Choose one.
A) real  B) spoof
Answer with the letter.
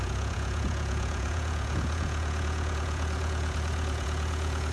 B